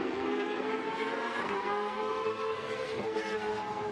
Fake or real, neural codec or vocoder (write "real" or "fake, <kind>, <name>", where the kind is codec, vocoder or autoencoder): fake, codec, SNAC